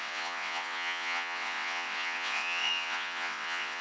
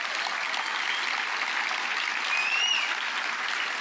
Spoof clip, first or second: first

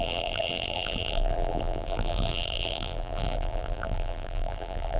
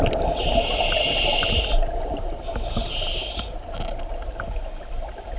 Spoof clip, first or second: first